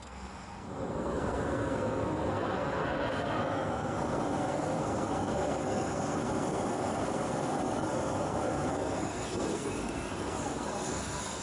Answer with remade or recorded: remade